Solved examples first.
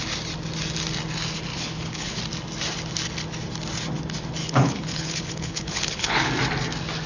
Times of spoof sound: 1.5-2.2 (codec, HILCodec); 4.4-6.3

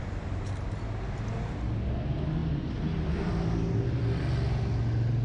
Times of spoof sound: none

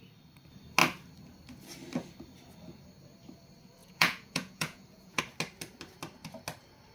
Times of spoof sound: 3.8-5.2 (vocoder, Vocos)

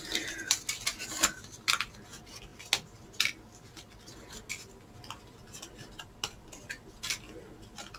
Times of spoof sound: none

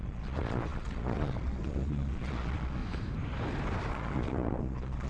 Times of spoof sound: 0.0-2.8 (vocoder, Vocos); 3.9-5.1